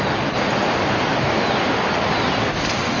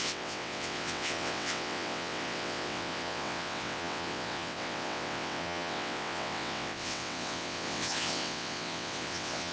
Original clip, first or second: first